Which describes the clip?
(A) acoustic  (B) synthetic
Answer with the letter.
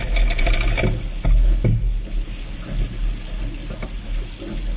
A